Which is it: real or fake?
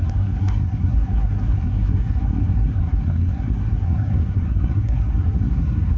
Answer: fake